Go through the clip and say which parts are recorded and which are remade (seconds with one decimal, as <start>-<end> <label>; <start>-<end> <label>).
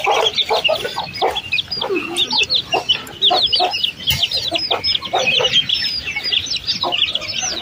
0.0-7.6 recorded